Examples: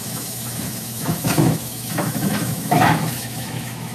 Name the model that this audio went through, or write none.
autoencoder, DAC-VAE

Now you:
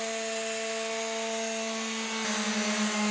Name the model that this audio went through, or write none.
none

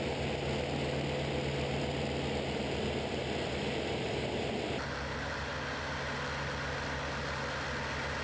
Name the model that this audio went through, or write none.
none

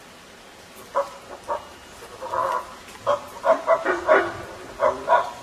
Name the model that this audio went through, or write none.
none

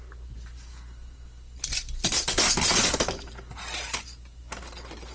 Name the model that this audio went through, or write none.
none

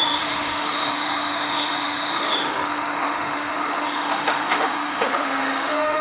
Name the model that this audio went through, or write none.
autoencoder, DAC-VAE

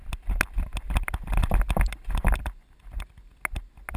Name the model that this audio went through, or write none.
none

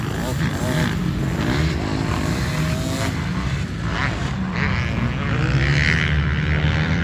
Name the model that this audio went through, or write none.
none